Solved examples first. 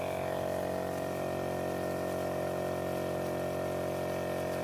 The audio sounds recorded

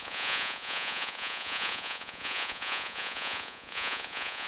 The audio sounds remade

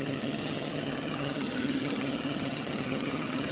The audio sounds remade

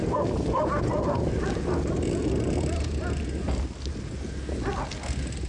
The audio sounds recorded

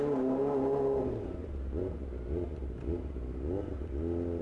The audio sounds recorded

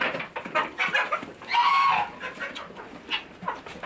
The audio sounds recorded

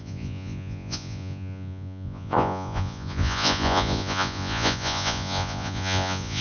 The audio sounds remade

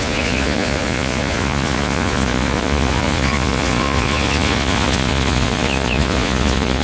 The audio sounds remade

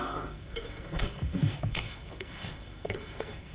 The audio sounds remade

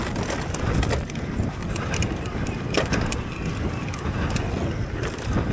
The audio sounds recorded